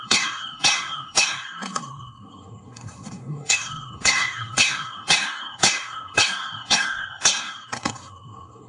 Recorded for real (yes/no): no